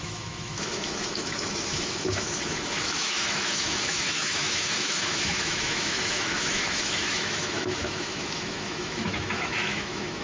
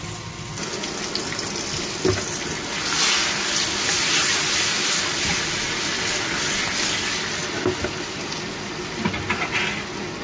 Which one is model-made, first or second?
first